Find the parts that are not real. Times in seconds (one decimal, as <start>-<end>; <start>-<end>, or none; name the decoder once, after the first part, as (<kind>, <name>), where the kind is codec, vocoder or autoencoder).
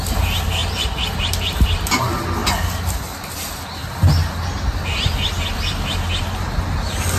0.6-1.3 (vocoder, BigVGAN v2)